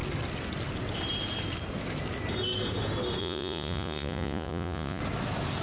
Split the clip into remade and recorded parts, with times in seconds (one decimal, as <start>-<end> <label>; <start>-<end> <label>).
0.0-3.2 recorded; 3.2-5.0 remade; 5.0-5.6 recorded